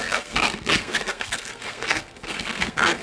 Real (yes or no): no